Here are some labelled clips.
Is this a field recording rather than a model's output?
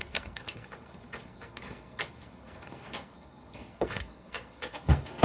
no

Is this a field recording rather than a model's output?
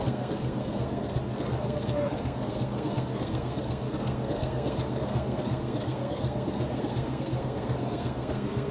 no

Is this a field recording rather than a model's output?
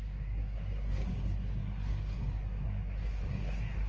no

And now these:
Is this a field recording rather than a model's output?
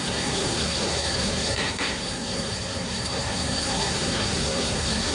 no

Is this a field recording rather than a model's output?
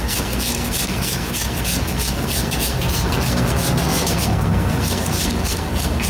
no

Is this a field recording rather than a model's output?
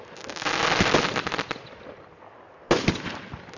yes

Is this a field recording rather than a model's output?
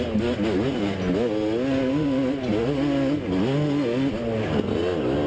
yes